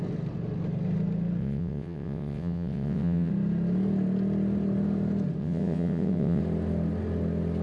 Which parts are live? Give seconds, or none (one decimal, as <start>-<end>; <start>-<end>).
0.0-1.4; 3.3-5.4; 6.4-7.6

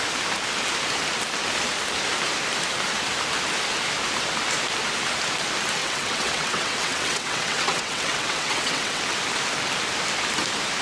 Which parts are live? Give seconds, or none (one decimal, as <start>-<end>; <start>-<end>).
0.0-5.8; 9.0-10.8

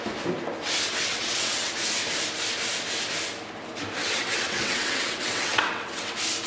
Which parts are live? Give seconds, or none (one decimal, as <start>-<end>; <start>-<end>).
0.0-1.1; 1.7-4.0; 6.1-6.5

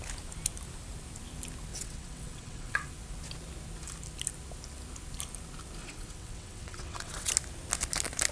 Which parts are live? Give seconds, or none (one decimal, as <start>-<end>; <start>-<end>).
0.0-1.7; 2.9-5.8; 7.3-8.3

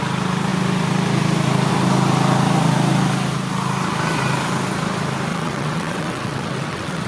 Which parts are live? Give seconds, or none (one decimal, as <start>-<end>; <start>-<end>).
0.0-5.3

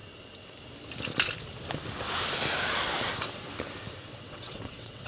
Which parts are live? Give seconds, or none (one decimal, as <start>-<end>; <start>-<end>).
0.0-4.1

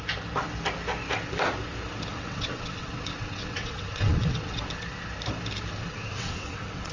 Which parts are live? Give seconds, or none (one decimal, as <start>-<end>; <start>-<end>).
0.0-2.1; 4.6-5.9